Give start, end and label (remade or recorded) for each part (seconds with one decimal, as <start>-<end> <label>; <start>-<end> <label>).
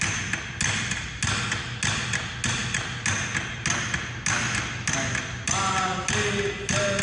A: 0.0-7.0 recorded